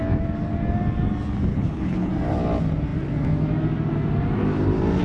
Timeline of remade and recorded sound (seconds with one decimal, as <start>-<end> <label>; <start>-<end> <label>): 0.0-1.5 recorded; 1.5-2.1 remade; 2.1-5.0 recorded